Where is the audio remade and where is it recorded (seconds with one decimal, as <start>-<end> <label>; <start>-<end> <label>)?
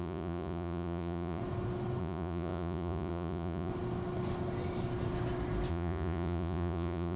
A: 0.0-1.4 remade; 1.4-2.0 recorded; 2.0-3.7 remade; 3.7-5.7 recorded; 5.7-7.2 remade